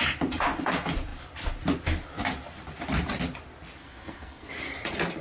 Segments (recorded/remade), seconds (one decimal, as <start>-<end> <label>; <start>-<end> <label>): 0.0-3.8 recorded; 3.8-4.5 remade; 4.5-5.2 recorded